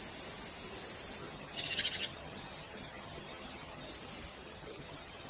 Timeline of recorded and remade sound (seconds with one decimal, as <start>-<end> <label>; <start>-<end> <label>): 0.0-1.2 recorded; 1.2-3.9 remade; 3.9-4.3 recorded; 4.3-5.3 remade

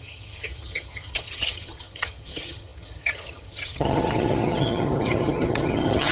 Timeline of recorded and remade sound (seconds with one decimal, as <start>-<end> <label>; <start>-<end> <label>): 0.0-6.1 remade

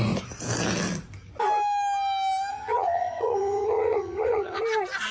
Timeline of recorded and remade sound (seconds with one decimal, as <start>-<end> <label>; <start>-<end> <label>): 0.0-2.5 recorded; 2.5-4.6 remade; 4.6-5.1 recorded

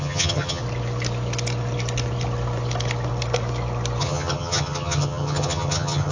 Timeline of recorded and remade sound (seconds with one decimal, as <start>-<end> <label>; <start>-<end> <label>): 0.0-0.6 remade; 0.6-4.0 recorded; 4.0-6.1 remade